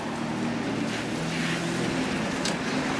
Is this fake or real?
real